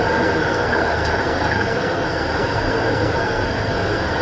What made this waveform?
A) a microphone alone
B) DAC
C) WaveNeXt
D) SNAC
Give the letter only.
D